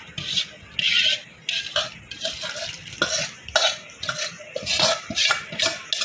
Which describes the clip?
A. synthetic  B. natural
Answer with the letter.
B